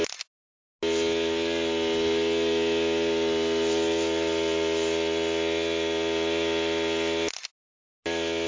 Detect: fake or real real